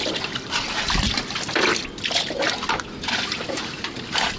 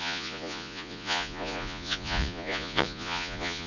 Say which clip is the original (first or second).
first